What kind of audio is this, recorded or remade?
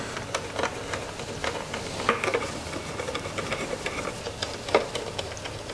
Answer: recorded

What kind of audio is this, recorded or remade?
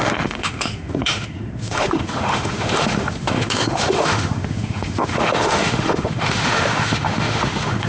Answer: remade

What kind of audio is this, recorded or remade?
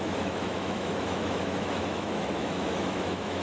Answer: remade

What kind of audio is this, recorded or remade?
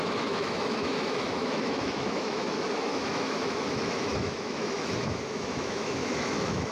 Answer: remade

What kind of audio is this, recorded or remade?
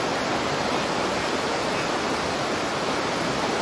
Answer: recorded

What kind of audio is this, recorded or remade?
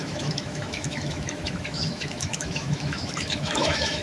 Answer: remade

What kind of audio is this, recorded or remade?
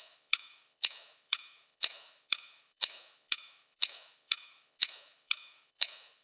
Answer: remade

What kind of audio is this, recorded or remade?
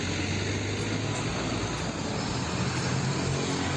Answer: recorded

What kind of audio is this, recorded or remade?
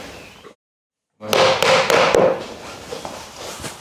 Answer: recorded